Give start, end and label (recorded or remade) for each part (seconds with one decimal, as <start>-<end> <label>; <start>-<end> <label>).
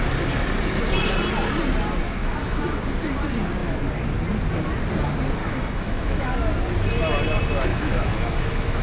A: 0.0-2.2 recorded; 2.2-2.8 remade; 2.8-5.4 recorded; 5.4-6.3 remade; 6.3-7.7 recorded; 7.7-8.8 remade